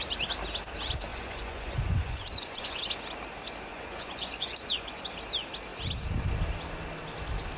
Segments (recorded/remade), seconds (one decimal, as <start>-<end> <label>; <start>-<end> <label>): 0.0-1.1 recorded; 1.1-2.8 remade; 2.8-3.7 recorded; 3.7-5.0 remade; 5.0-7.6 recorded